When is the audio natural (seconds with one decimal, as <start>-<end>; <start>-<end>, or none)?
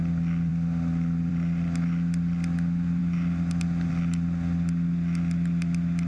0.0-6.1